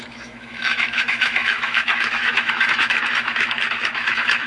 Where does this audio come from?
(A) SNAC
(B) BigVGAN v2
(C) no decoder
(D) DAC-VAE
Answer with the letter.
D